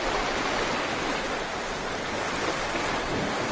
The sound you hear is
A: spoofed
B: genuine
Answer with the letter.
B